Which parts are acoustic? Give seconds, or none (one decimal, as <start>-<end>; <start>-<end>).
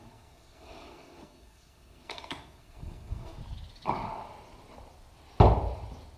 3.4-6.2